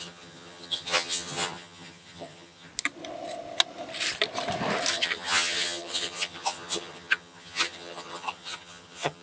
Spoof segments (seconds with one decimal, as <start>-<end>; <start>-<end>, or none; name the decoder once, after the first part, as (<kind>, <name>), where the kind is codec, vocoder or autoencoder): 0.0-2.7 (vocoder, HiFi-GAN); 4.9-9.2